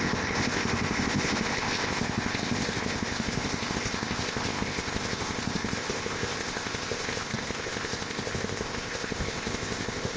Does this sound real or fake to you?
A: fake